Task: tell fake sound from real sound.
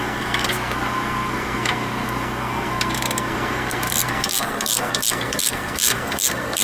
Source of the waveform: fake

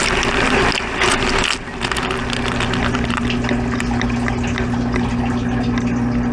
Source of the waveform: real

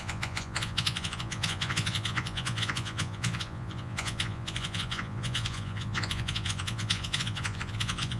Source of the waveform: fake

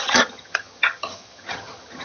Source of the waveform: fake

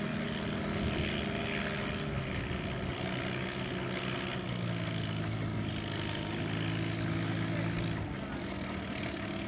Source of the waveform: real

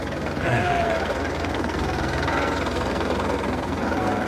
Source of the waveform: fake